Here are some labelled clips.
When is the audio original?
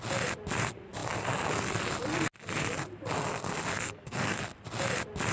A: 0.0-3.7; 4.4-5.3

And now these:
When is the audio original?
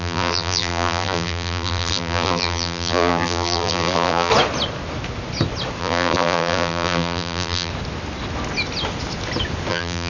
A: 4.3-5.8; 7.7-9.7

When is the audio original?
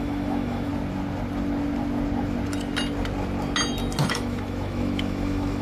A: 0.7-4.1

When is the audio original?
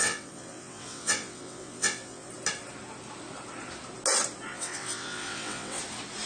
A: 2.3-4.5; 5.8-6.3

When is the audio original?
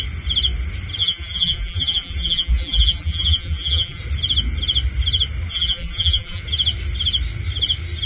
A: 0.0-1.0; 4.0-5.5; 6.4-8.1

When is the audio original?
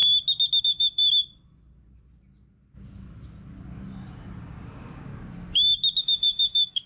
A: 0.0-0.6; 1.0-4.4; 5.1-6.0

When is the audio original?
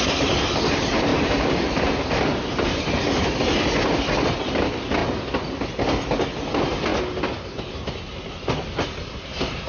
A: 0.0-9.7